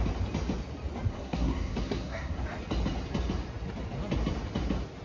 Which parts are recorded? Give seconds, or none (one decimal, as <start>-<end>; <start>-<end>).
0.0-1.1; 2.4-5.0